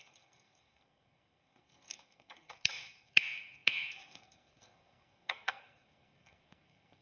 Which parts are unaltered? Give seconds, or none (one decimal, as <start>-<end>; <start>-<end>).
none